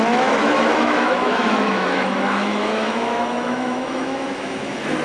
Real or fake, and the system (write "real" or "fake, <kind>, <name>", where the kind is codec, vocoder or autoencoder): fake, autoencoder, DAC-VAE